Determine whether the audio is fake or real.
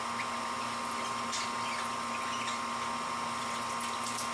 real